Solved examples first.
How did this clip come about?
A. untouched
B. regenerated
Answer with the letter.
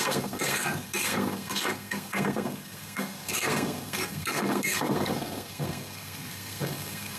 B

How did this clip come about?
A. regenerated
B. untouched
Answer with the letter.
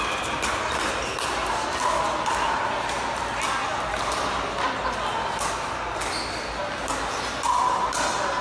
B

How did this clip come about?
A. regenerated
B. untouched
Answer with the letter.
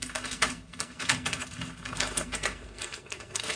A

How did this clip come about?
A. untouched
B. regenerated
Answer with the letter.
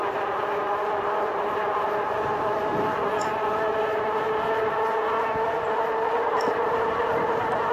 A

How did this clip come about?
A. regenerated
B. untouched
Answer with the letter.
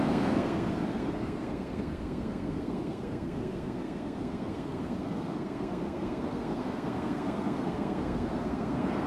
A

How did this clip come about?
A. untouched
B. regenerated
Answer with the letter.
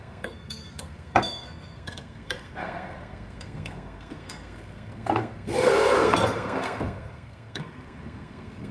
B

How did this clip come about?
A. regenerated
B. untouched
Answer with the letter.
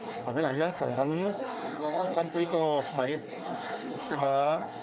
A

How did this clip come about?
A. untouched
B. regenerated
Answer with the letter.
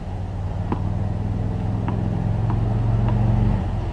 A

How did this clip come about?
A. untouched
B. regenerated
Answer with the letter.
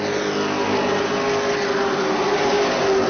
A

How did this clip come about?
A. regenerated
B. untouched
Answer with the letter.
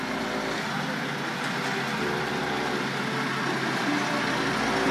B